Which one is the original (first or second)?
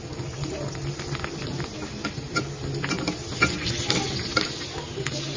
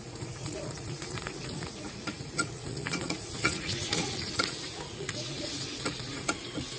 first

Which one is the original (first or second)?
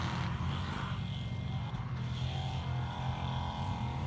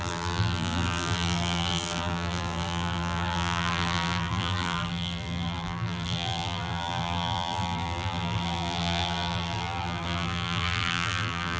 first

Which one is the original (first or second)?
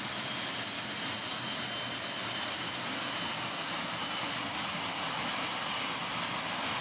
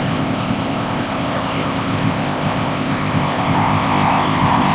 first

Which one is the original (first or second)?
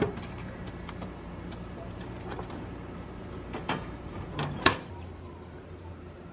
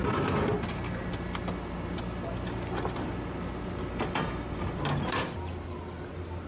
second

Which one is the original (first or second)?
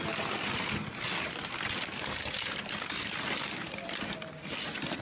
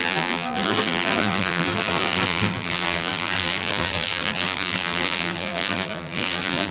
first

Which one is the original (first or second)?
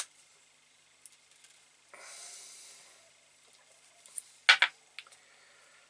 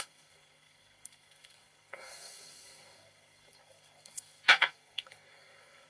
first